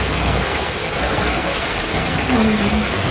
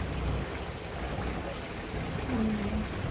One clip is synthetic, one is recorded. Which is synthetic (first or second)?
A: first